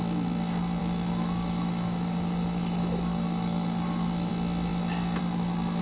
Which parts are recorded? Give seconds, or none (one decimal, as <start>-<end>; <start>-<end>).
0.0-0.8; 4.3-5.8